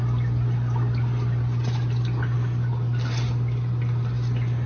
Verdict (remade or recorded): recorded